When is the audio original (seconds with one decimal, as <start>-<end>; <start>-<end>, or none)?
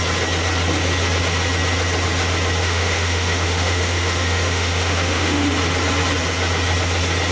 0.0-2.6; 5.5-7.3